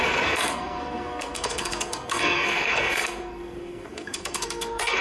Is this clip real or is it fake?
fake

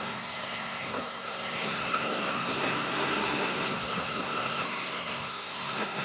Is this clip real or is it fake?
fake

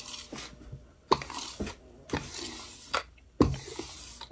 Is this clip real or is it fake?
real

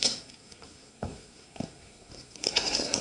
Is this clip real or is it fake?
fake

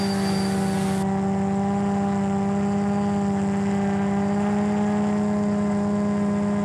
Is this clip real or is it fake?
real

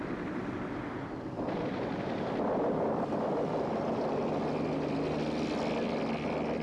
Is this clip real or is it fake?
real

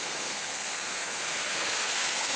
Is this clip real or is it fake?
fake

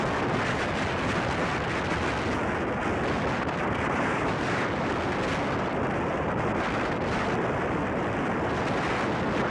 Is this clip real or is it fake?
real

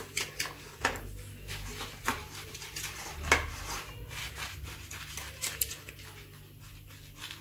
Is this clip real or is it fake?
real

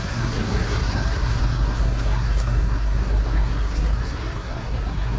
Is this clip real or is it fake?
fake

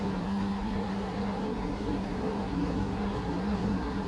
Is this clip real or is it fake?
fake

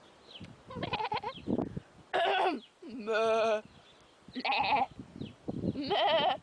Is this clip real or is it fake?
real